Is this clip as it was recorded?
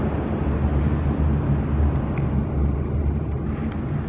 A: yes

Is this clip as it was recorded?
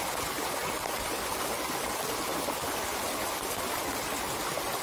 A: yes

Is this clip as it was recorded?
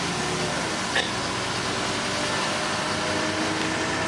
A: yes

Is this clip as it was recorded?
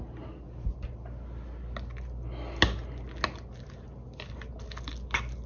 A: yes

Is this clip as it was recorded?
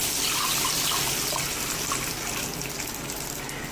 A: yes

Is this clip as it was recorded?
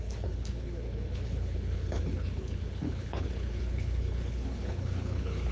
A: no